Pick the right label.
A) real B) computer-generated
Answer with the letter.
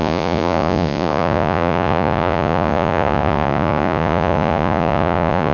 B